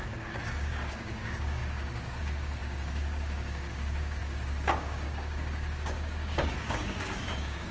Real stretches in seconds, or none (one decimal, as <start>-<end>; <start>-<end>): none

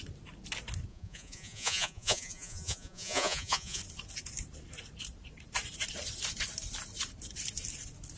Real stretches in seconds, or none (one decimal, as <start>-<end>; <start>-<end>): 0.0-0.9; 3.8-8.2

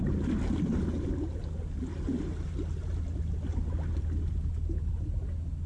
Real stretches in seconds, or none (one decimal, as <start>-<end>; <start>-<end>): 0.0-5.7